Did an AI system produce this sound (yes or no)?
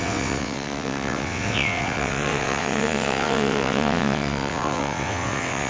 yes